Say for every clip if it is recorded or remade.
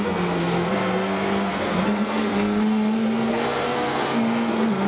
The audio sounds remade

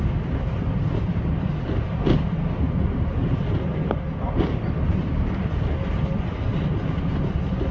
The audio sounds recorded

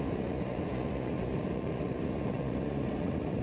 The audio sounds remade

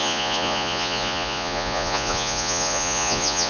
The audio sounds remade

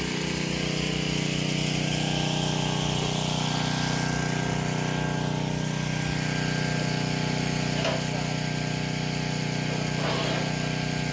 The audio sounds recorded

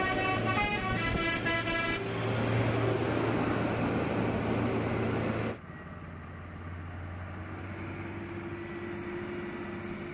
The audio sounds recorded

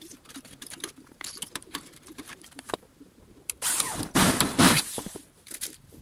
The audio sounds remade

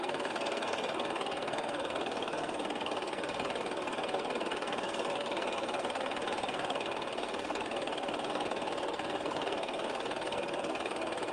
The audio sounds remade